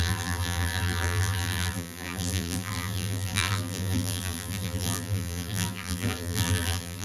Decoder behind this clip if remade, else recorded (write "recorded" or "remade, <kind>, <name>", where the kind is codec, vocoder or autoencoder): remade, vocoder, BigVGAN v2